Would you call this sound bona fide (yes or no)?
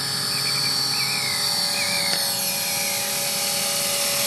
yes